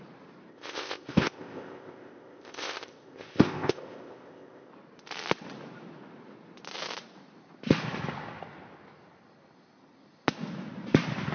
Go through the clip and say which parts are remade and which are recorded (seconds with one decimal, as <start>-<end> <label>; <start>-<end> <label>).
0.0-0.5 recorded; 0.5-4.7 remade; 4.7-11.3 recorded